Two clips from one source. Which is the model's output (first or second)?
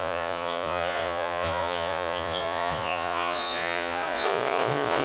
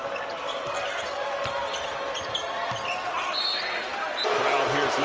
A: first